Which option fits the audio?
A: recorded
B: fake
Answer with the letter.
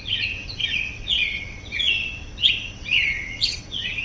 B